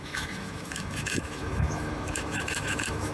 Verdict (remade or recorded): remade